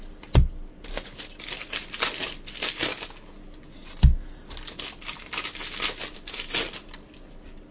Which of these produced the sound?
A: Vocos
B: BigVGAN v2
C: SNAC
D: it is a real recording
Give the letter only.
D